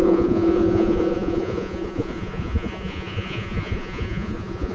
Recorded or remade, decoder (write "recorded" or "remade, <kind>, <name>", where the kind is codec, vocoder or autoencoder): remade, vocoder, Vocos